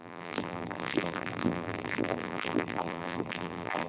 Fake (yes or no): yes